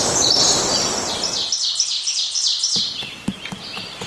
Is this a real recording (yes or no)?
yes